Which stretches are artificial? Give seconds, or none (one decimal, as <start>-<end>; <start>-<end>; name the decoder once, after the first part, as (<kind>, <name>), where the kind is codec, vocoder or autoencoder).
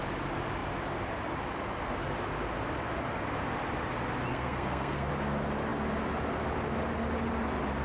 4.3-5.1 (codec, SNAC)